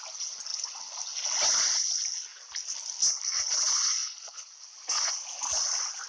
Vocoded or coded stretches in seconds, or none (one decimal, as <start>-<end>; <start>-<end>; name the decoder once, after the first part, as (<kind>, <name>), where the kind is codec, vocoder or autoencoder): none